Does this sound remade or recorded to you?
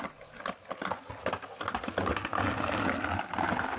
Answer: recorded